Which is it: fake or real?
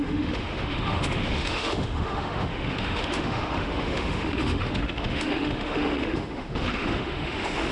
fake